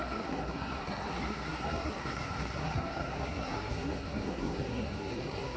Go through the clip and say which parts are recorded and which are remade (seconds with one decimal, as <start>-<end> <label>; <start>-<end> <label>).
0.0-5.6 remade